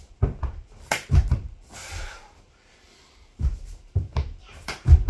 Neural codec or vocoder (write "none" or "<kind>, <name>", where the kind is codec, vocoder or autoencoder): vocoder, BigVGAN v2